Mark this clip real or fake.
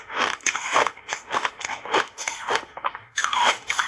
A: fake